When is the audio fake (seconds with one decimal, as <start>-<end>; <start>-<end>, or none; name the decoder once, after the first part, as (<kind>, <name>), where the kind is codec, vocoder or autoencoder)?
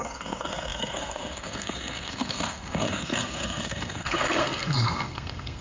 0.0-5.6 (codec, SNAC)